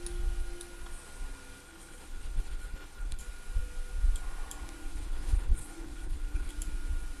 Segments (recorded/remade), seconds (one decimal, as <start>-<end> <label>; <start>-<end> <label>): 0.0-1.6 recorded; 1.6-3.2 remade; 3.2-4.9 recorded; 4.9-6.5 remade; 6.5-7.2 recorded